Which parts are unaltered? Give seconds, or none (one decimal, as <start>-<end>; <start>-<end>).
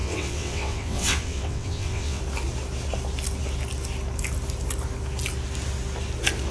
2.2-6.5